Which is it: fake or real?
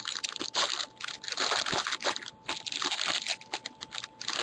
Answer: real